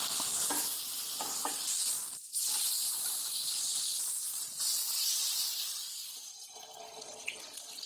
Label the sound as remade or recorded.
recorded